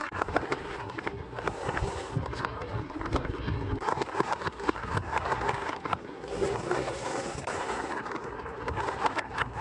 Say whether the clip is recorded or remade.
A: remade